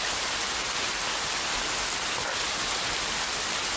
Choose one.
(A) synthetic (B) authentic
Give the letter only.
B